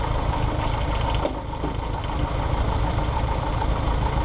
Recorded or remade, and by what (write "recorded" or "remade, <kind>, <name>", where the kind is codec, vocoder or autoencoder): recorded